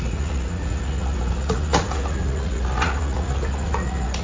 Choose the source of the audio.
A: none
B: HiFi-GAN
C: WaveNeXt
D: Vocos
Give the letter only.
D